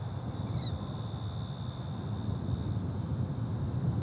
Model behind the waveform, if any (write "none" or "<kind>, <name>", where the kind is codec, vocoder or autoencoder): none